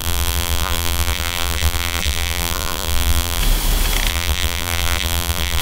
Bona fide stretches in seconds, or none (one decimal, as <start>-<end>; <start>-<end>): 3.4-4.1